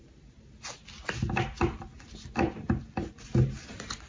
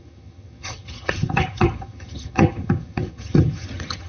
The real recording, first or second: first